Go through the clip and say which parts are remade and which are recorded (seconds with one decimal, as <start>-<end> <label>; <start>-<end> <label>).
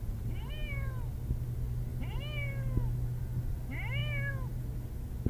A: 0.0-5.3 recorded